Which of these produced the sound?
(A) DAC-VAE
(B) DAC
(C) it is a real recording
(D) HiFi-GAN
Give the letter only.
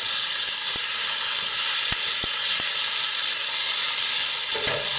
C